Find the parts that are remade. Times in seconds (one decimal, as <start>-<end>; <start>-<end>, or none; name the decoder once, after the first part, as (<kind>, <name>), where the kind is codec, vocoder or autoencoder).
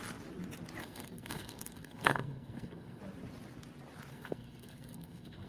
0.8-3.0 (codec, SNAC); 4.1-5.5